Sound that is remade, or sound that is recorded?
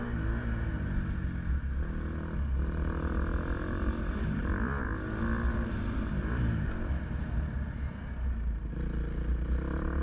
recorded